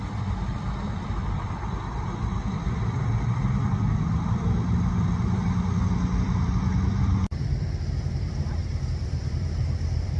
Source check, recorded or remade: remade